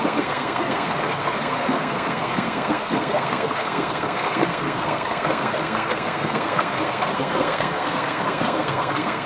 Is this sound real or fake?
fake